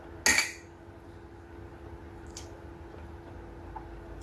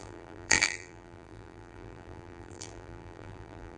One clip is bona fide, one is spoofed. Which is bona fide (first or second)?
first